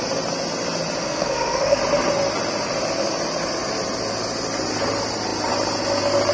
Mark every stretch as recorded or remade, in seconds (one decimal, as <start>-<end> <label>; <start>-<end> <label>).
0.0-1.0 recorded; 1.0-1.8 remade; 1.8-6.3 recorded